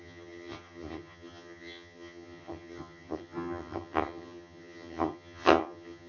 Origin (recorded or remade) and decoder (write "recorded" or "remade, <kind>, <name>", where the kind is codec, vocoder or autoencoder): remade, vocoder, HiFi-GAN